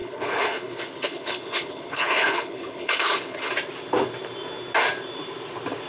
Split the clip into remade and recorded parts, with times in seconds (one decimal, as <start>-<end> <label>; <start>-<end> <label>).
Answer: 0.0-3.5 remade; 3.5-5.9 recorded

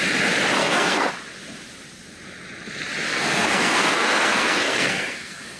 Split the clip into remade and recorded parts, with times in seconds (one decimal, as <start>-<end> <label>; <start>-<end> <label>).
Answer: 0.0-0.6 recorded; 0.6-1.1 remade; 1.1-3.1 recorded; 3.1-5.6 remade

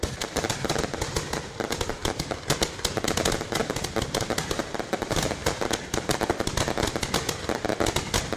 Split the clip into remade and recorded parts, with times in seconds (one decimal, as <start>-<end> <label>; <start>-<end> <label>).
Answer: 0.0-2.0 remade; 2.0-3.3 recorded; 3.3-5.4 remade; 5.4-8.4 recorded

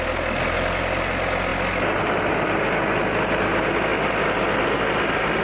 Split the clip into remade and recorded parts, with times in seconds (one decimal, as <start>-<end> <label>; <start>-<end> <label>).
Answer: 0.0-5.4 recorded

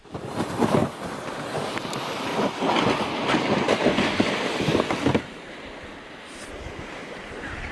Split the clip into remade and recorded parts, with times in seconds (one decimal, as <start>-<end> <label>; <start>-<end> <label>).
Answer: 0.0-0.8 remade; 0.8-3.0 recorded; 3.0-4.7 remade; 4.7-6.1 recorded; 6.1-7.7 remade

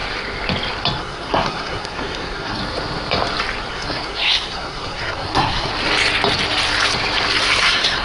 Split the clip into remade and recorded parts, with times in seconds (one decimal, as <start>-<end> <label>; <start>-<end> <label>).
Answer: 0.0-1.0 recorded; 1.0-2.6 remade; 2.6-3.7 recorded; 3.7-5.7 remade; 5.7-7.6 recorded; 7.6-8.0 remade